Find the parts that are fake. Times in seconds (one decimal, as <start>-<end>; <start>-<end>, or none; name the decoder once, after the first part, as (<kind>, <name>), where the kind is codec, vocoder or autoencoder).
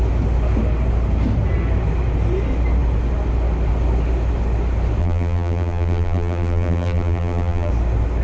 5.0-7.7 (vocoder, BigVGAN v2)